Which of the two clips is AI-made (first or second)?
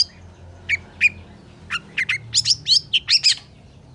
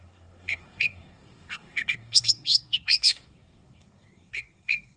second